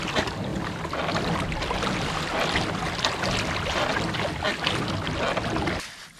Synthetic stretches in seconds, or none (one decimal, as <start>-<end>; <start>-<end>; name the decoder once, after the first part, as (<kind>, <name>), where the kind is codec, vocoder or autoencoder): none